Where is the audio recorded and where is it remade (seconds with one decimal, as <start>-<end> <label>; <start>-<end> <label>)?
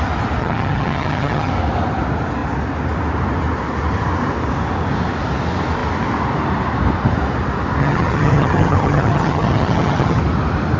0.0-0.4 recorded; 0.4-1.5 remade; 1.5-7.8 recorded; 7.8-10.2 remade; 10.2-10.8 recorded